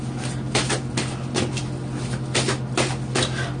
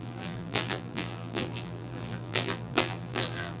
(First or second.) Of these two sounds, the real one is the first